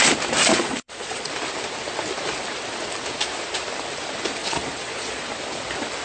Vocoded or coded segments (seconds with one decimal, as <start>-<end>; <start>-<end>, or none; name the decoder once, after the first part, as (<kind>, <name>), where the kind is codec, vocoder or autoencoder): 0.5-1.3 (vocoder, Vocos); 4.4-5.2